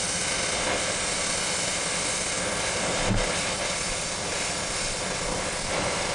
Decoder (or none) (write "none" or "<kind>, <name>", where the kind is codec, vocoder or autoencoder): none